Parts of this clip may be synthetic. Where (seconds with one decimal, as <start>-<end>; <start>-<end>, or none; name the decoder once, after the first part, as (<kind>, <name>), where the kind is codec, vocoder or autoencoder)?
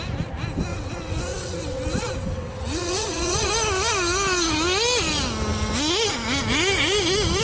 0.7-3.5 (vocoder, WaveNeXt)